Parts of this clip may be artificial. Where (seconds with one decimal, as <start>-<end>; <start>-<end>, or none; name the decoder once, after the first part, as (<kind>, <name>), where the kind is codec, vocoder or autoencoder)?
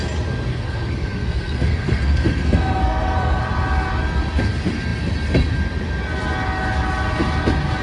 0.5-3.4 (codec, SNAC)